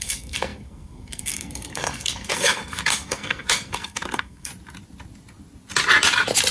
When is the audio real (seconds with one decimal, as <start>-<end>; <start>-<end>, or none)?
4.5-6.5